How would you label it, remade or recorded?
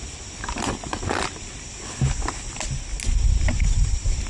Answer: recorded